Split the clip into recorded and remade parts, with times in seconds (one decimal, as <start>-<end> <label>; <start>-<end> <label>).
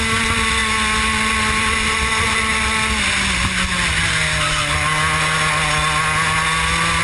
0.0-7.0 recorded